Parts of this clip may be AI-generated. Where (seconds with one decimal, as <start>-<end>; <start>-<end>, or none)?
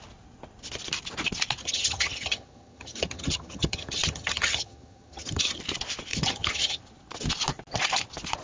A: 1.6-5.6; 6.1-6.8